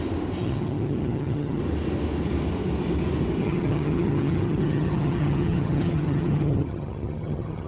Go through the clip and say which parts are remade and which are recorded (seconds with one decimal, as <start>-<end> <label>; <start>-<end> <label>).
0.0-0.4 recorded; 0.4-1.6 remade; 1.6-3.4 recorded; 3.4-7.7 remade